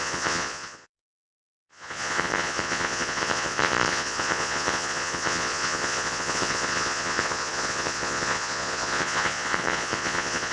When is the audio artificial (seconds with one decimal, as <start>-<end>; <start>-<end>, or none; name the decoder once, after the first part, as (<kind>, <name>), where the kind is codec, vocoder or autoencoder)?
0.0-10.5 (vocoder, Vocos)